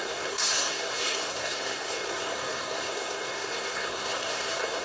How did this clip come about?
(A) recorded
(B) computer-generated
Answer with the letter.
B